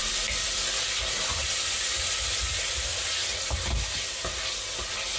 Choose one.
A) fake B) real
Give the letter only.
B